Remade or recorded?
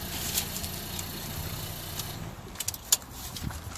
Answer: recorded